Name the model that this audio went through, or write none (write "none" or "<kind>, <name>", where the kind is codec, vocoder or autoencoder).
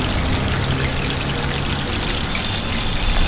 none